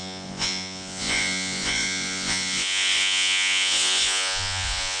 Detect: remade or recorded remade